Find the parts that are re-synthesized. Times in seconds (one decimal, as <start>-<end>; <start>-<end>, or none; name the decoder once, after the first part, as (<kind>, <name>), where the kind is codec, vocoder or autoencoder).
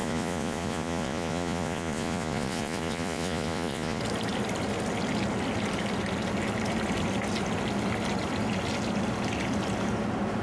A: 0.0-4.0 (vocoder, Vocos)